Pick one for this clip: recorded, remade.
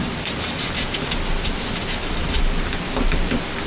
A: recorded